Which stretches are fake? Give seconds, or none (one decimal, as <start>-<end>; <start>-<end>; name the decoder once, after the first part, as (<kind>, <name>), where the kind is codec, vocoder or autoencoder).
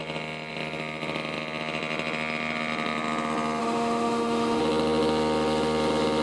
3.6-4.6 (autoencoder, DAC-VAE)